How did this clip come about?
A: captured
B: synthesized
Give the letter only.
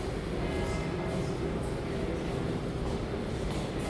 A